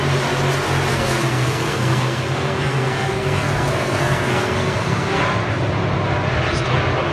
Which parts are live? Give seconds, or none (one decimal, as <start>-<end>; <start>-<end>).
0.0-0.9; 5.2-7.1